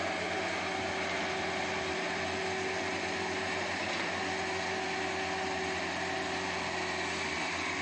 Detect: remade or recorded recorded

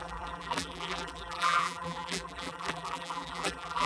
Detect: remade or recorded remade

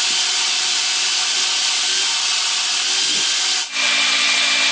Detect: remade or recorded recorded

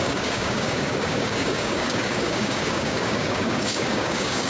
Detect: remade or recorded remade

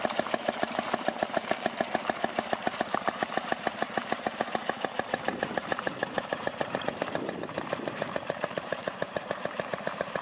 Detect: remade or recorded remade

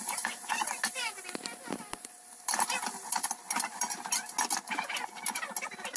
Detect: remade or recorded recorded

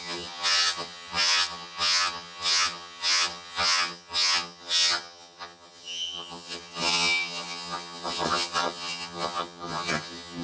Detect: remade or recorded remade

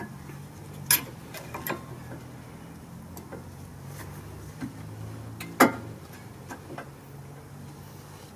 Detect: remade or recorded recorded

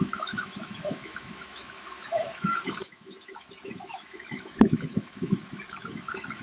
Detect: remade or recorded remade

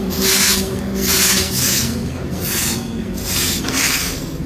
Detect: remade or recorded remade